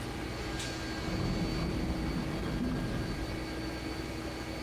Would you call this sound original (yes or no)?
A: yes